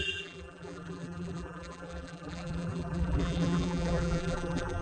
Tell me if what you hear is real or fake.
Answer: fake